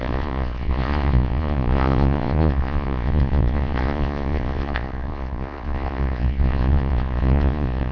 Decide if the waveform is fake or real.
fake